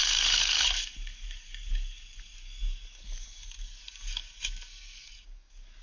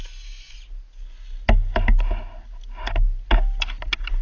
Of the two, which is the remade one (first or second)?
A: first